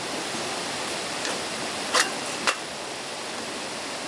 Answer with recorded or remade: recorded